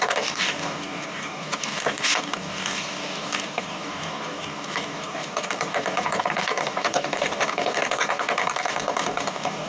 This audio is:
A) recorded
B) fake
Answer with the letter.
B